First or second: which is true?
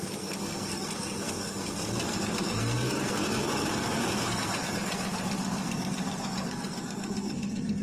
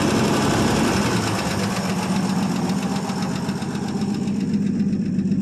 second